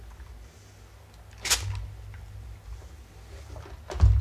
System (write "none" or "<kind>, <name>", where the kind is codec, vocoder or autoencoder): none